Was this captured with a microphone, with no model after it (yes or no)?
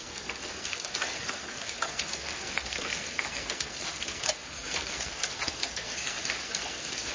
no